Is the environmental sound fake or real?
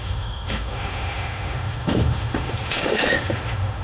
fake